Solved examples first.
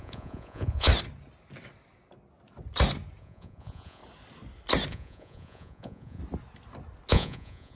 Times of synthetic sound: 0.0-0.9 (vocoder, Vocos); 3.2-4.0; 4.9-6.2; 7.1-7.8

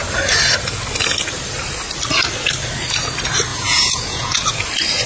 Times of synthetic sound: 3.5-4.4 (vocoder, Vocos)